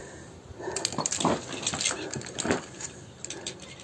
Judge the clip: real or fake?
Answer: real